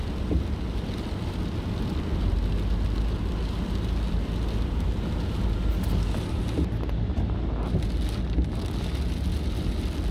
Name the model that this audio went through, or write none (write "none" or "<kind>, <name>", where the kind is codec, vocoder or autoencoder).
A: none